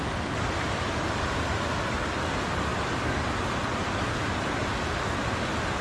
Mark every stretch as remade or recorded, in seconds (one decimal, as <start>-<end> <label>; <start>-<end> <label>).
0.0-5.8 recorded